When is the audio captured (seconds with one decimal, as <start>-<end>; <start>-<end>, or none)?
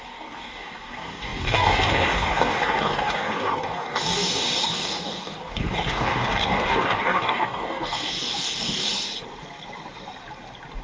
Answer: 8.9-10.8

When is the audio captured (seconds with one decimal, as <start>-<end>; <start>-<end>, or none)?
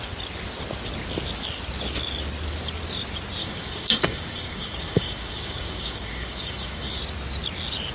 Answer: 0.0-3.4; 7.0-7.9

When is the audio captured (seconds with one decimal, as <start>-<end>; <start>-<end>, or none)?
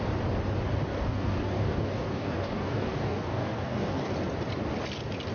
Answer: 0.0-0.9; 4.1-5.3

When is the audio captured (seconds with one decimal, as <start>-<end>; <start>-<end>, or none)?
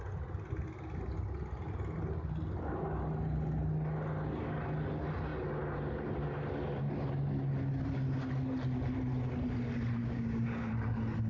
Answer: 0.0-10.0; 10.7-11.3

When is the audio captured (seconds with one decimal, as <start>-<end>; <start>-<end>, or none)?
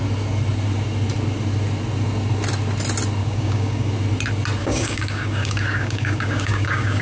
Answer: 0.0-3.2; 3.9-4.6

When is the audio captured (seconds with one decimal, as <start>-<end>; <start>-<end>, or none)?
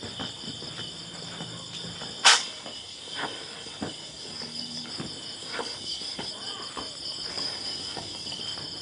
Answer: 0.0-2.3; 4.9-5.4; 6.3-7.3; 8.4-8.8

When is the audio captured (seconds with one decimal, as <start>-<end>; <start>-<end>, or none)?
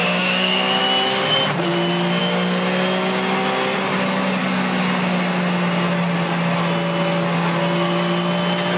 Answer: 0.8-8.8